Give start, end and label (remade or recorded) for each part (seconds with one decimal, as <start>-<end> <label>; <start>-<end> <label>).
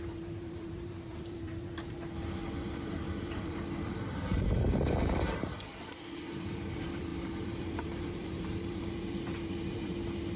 0.0-10.4 remade